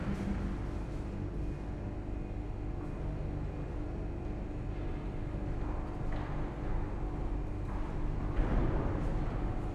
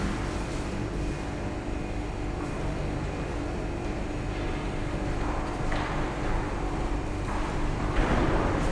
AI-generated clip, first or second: second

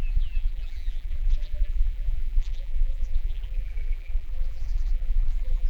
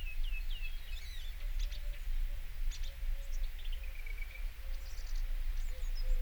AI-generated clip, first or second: first